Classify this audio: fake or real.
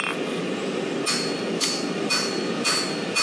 real